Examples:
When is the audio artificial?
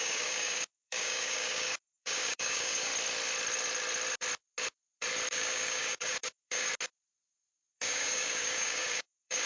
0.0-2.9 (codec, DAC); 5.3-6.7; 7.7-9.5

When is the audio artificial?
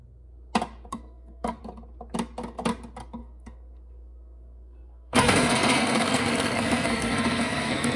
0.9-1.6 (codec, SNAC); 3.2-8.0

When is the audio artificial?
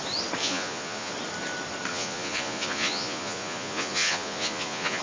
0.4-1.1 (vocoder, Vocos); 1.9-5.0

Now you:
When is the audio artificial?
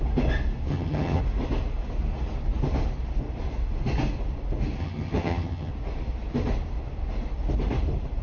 0.7-1.2 (vocoder, HiFi-GAN); 4.8-5.7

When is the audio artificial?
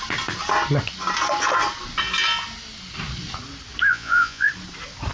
3.9-4.5 (vocoder, Vocos)